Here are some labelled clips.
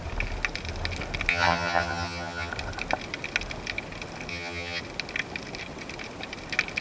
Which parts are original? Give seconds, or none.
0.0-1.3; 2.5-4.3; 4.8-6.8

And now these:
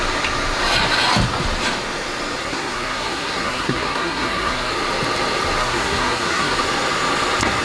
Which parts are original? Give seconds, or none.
0.0-2.4; 4.7-5.6; 6.6-7.6